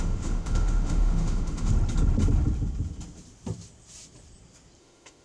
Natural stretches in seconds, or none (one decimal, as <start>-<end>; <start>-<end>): 1.7-4.8